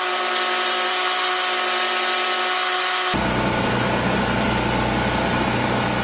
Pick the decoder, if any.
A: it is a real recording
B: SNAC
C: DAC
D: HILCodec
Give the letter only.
A